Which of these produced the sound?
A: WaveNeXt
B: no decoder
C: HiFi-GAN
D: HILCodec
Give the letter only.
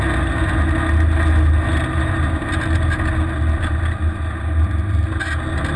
B